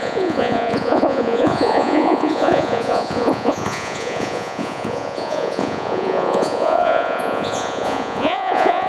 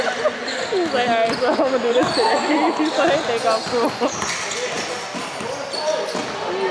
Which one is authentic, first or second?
second